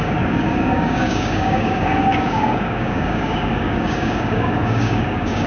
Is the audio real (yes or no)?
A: no